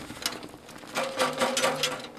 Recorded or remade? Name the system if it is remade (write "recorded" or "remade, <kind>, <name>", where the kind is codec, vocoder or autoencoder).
recorded